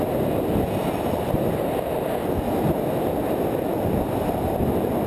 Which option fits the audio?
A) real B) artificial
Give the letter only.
A